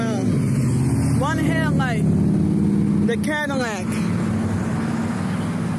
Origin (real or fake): real